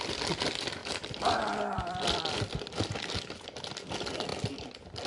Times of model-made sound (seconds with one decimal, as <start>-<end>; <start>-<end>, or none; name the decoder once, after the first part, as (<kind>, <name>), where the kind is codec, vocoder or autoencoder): 0.8-3.9 (vocoder, BigVGAN v2)